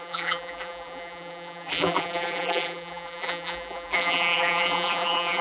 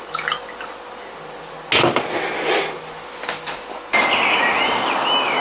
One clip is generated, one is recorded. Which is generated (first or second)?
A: first